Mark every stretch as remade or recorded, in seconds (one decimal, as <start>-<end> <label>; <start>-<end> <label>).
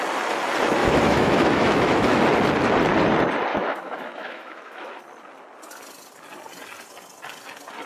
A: 0.0-0.8 recorded; 0.8-2.2 remade; 2.2-3.5 recorded; 3.5-5.0 remade; 5.0-7.9 recorded